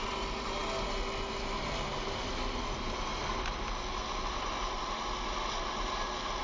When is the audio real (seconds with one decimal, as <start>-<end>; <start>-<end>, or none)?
0.0-6.4